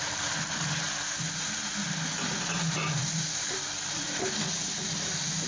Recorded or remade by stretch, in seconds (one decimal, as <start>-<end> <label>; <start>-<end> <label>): 0.0-5.5 recorded